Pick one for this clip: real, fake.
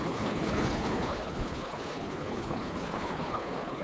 fake